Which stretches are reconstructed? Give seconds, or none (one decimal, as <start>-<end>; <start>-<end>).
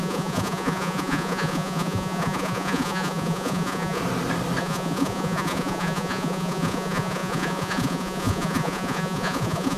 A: 0.0-4.0; 4.6-9.8